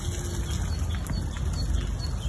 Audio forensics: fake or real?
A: real